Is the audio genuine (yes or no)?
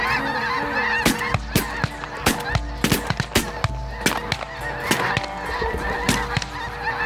yes